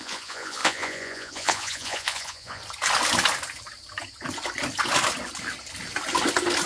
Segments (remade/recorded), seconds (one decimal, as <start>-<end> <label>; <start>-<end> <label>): 0.0-2.6 remade; 2.6-6.7 recorded